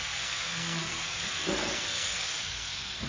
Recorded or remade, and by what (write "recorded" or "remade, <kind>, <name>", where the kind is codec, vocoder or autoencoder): remade, codec, SNAC